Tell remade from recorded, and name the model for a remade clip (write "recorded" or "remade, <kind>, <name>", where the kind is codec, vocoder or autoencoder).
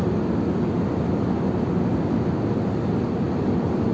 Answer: recorded